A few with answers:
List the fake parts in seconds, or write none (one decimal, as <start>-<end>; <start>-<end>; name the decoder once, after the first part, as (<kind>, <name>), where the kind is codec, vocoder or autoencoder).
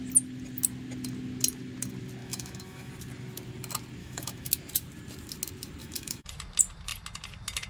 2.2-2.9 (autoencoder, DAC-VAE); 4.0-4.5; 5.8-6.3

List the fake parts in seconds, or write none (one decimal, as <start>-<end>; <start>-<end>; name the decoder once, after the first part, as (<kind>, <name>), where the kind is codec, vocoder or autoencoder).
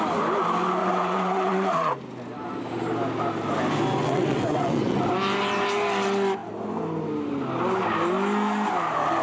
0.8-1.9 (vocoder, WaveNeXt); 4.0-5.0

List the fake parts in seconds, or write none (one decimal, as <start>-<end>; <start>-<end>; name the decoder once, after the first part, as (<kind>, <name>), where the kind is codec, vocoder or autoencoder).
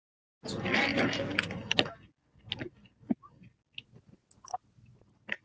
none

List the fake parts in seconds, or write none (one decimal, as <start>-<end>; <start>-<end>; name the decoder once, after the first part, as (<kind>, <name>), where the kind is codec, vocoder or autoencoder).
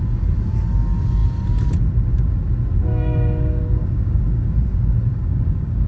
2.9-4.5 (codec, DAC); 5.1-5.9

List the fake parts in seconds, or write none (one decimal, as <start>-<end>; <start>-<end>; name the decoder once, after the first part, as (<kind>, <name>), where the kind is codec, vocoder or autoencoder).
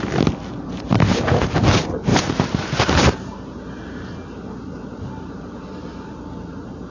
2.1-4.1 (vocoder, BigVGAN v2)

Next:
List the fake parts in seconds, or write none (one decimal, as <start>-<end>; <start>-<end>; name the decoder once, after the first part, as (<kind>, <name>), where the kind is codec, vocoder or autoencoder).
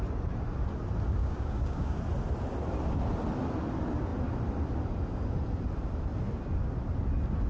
1.2-2.0 (codec, DAC)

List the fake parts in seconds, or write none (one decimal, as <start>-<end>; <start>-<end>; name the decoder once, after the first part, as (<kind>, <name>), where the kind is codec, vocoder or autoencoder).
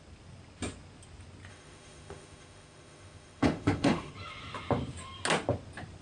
1.5-4.1 (autoencoder, DAC-VAE)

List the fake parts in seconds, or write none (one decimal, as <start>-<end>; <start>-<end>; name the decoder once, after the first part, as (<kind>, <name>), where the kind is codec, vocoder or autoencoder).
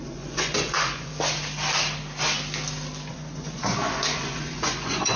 0.0-1.1 (vocoder, Vocos); 3.1-5.2